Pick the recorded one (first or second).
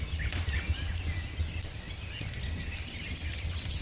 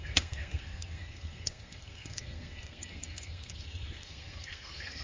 first